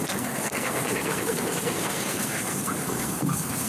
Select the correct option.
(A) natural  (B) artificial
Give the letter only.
B